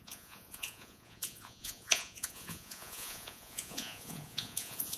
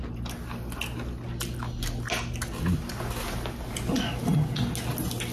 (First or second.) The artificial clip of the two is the first